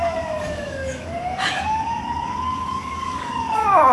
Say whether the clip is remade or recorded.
remade